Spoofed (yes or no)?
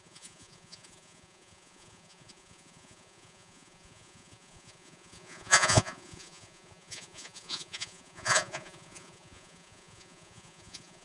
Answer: yes